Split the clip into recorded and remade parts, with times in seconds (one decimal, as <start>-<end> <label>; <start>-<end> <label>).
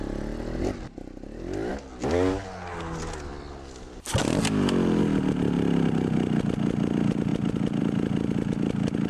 0.0-9.1 recorded